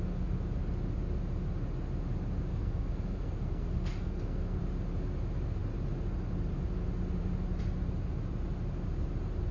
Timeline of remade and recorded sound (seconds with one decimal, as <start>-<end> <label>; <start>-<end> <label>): 0.0-2.5 recorded; 2.5-4.6 remade; 4.6-9.5 recorded